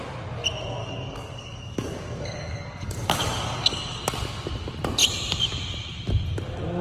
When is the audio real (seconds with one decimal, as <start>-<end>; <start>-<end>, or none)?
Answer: 0.0-0.8; 4.0-6.8